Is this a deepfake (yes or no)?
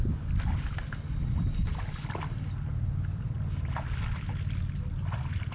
no